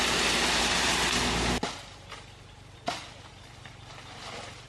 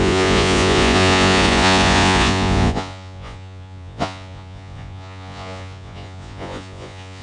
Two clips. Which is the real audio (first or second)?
first